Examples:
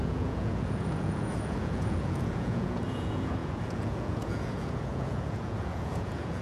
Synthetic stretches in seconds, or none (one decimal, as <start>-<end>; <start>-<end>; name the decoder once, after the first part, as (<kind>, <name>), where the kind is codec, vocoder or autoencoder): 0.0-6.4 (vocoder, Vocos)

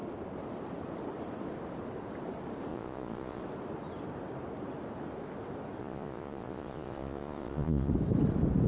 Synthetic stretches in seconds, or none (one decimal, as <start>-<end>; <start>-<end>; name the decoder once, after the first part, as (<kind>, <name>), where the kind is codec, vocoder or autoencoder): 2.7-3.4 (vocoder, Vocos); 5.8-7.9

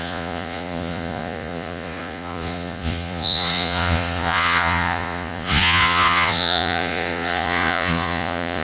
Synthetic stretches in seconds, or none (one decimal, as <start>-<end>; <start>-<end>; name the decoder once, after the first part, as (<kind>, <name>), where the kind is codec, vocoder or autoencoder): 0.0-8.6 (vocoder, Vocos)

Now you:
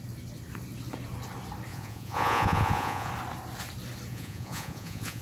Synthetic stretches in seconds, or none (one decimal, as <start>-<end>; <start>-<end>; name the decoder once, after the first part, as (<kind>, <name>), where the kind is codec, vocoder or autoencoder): 1.7-3.1 (vocoder, Vocos); 4.1-5.2

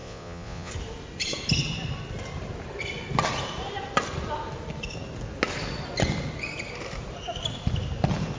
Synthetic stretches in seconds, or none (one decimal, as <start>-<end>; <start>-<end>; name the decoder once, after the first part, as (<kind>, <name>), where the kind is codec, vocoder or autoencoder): 0.0-0.7 (vocoder, Vocos)

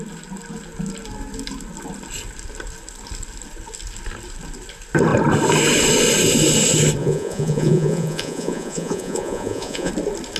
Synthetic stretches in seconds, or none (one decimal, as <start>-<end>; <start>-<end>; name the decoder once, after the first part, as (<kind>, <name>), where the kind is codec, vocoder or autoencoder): 7.0-9.9 (vocoder, Vocos)